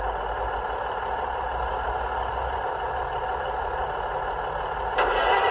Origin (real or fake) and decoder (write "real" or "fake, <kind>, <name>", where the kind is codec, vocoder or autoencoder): real